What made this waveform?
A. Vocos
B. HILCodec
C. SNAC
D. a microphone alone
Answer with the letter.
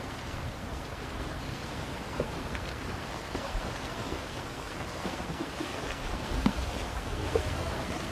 C